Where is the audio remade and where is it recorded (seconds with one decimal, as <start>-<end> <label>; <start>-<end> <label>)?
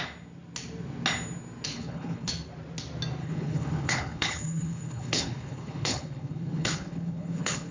0.0-1.7 recorded; 1.7-2.3 remade; 2.3-3.2 recorded; 3.2-7.7 remade